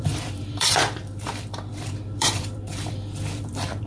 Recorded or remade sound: remade